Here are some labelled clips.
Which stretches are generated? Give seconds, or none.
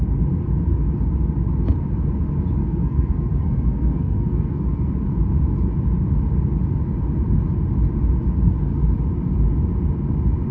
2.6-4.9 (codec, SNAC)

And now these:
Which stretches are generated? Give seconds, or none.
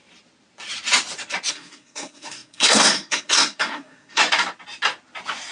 1.5-4.2 (codec, SNAC)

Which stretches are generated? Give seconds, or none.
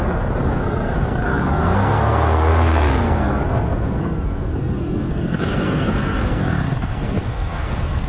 0.0-8.1 (codec, SNAC)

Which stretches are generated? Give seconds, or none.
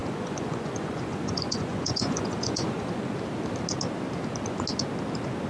0.0-3.1 (vocoder, Vocos)